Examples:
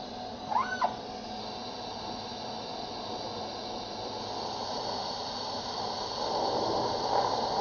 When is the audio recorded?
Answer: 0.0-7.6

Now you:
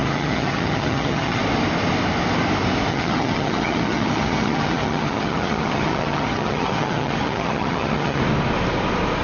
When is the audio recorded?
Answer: 1.4-2.9; 8.2-9.2

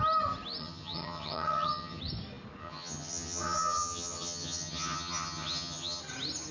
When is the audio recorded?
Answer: 0.0-0.6; 2.0-2.6; 6.0-6.5

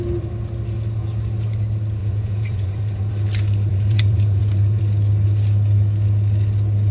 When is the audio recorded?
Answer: 0.0-2.0; 3.1-3.7; 4.8-6.9